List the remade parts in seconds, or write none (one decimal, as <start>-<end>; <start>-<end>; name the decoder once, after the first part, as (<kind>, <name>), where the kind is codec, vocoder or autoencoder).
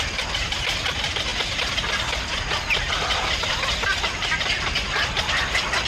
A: none